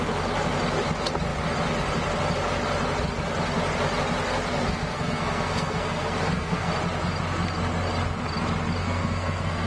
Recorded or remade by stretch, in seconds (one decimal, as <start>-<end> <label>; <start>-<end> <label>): 0.0-4.5 recorded; 4.5-6.7 remade; 6.7-8.8 recorded; 8.8-9.7 remade